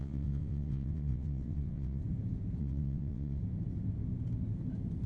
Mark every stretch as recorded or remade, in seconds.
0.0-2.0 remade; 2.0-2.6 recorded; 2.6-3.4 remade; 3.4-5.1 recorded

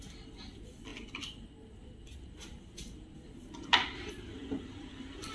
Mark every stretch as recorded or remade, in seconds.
0.0-5.3 recorded

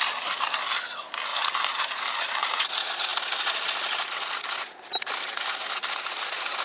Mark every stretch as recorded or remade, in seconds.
0.0-1.3 recorded; 1.3-2.7 remade; 2.7-6.6 recorded

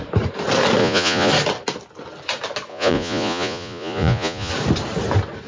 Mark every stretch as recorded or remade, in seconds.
0.0-0.8 recorded; 0.8-1.3 remade; 1.3-2.7 recorded; 2.7-4.5 remade; 4.5-5.5 recorded

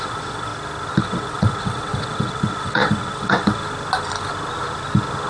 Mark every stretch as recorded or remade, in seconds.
0.0-0.5 remade; 0.5-1.0 recorded; 1.0-3.6 remade; 3.6-5.3 recorded

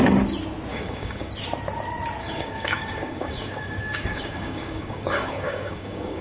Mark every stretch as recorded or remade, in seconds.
0.0-0.7 recorded; 0.7-1.3 remade; 1.3-2.2 recorded; 2.2-6.2 remade